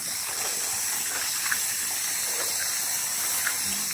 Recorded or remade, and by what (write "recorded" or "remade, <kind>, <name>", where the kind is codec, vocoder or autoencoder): recorded